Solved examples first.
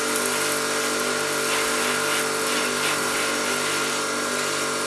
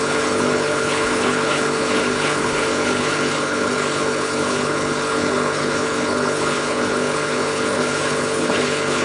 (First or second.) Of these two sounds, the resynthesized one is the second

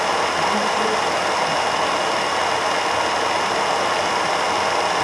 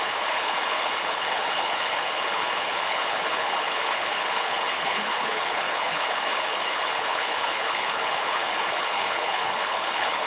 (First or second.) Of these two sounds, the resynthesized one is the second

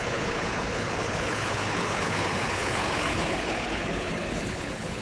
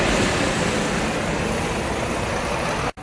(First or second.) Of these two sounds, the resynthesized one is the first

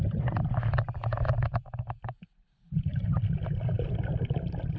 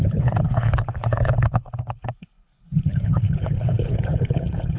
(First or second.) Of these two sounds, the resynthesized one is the second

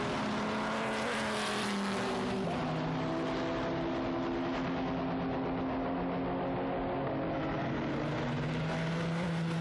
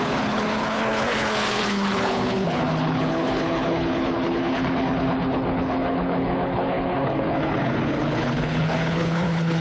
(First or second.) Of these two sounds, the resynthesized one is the second